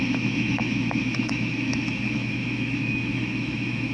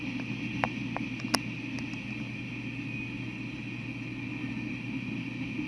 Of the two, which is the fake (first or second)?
first